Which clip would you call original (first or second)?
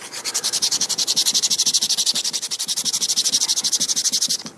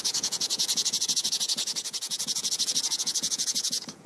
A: first